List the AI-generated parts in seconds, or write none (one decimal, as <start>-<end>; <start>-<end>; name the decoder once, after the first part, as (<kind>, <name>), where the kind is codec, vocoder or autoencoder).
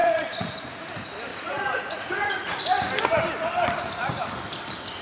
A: 0.0-0.7 (vocoder, Vocos); 1.3-2.6